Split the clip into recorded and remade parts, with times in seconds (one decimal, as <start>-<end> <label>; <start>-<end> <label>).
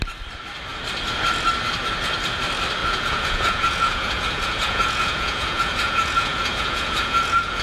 0.0-2.8 recorded; 2.8-7.6 remade